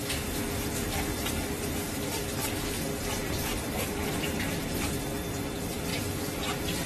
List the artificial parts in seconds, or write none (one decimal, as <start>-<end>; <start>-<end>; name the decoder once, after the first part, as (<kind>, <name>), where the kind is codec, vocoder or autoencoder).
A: 3.5-4.4 (vocoder, BigVGAN v2)